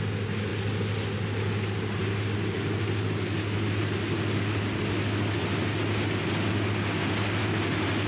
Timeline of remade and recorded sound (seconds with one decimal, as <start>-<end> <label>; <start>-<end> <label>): 0.0-8.1 recorded